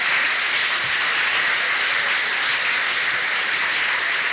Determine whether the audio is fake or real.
real